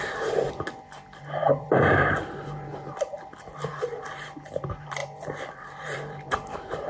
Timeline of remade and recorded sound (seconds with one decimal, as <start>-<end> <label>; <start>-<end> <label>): 0.0-6.9 remade